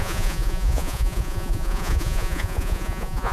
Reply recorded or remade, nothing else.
remade